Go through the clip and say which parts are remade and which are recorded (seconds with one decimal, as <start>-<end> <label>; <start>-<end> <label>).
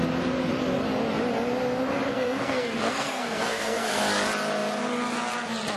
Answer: 0.0-2.1 recorded; 2.1-4.0 remade; 4.0-5.8 recorded